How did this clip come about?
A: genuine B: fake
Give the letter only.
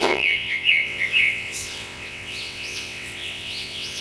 B